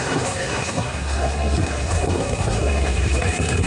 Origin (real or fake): fake